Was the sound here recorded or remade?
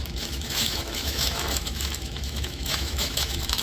remade